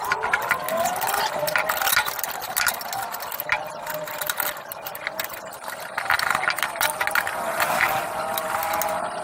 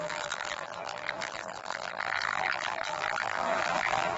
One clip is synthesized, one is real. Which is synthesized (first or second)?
second